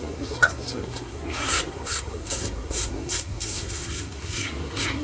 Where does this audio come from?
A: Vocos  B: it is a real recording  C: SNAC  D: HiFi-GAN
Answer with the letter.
C